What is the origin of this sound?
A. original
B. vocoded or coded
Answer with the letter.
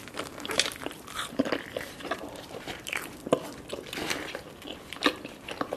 A